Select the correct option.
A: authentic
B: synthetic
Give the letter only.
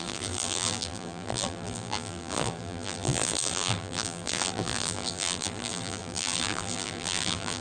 B